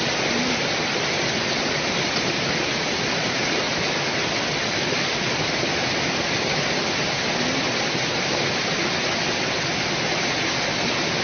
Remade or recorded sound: recorded